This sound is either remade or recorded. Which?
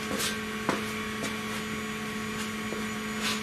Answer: recorded